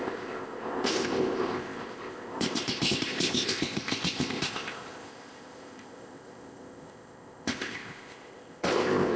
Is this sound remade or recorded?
remade